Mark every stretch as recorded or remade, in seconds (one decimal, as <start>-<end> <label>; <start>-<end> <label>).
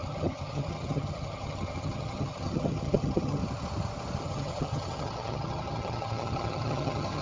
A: 0.0-3.4 remade; 3.4-4.2 recorded; 4.2-7.2 remade